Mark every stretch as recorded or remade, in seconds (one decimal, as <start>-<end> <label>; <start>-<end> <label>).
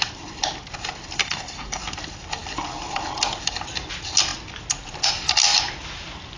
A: 0.0-1.2 recorded; 1.2-1.8 remade; 1.8-6.4 recorded